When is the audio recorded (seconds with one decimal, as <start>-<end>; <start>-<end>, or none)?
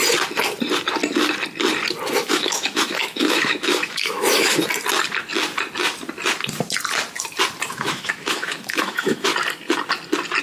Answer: 0.0-2.2; 4.7-7.7; 9.3-10.4